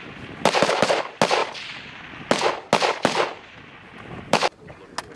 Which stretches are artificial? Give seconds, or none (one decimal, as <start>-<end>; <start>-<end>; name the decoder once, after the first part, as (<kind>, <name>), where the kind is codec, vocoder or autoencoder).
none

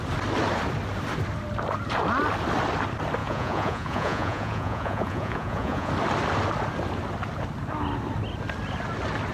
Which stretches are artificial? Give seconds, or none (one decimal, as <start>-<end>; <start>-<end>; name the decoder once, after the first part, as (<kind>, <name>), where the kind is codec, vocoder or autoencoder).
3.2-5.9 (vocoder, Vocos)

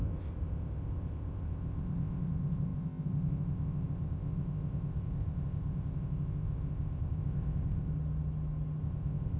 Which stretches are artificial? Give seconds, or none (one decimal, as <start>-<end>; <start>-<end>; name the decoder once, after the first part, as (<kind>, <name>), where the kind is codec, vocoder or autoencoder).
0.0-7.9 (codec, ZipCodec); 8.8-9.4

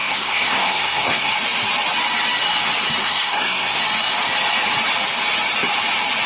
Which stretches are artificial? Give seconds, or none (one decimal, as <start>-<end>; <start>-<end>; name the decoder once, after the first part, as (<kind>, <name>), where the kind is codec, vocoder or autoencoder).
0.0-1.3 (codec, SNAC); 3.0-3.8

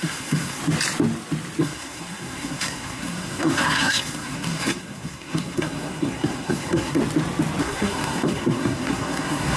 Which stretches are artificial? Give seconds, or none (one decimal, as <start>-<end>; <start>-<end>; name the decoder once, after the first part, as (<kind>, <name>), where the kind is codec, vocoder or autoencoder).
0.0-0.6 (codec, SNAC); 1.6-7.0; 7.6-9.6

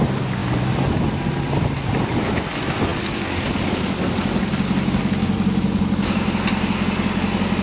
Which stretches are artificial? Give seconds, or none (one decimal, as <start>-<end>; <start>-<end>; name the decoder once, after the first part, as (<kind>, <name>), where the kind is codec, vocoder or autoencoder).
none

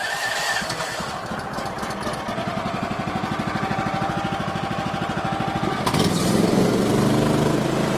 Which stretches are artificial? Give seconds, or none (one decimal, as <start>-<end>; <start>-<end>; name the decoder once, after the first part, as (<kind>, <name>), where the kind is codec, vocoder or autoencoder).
none